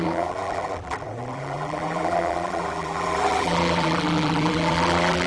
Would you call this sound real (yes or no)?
no